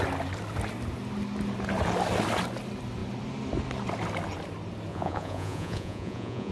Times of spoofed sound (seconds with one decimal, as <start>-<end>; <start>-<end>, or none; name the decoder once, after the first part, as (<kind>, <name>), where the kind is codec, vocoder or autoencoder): 4.9-6.5 (vocoder, Vocos)